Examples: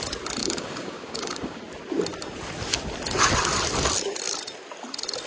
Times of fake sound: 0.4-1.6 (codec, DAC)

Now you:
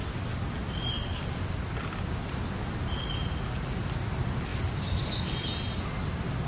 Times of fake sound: none

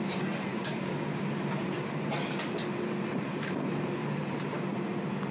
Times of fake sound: 0.5-1.2 (codec, DAC)

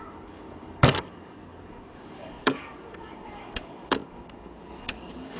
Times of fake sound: 0.0-5.4 (codec, DAC)

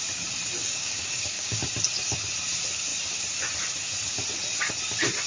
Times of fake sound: 0.6-1.6 (codec, DAC)

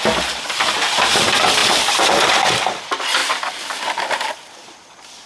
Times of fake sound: none

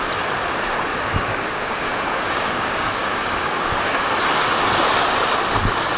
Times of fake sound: 0.9-4.1 (codec, DAC)

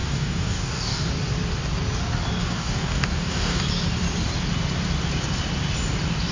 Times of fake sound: 0.0-1.1 (codec, DAC); 2.4-3.6